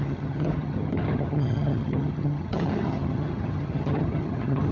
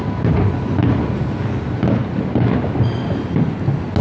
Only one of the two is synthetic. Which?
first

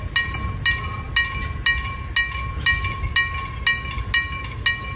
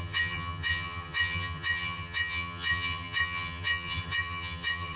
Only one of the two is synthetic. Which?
second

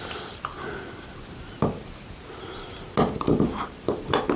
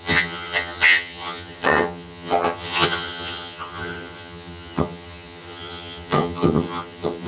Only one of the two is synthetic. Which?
second